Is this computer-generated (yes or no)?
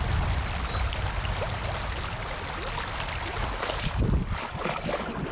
no